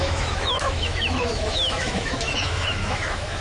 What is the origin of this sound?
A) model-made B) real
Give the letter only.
A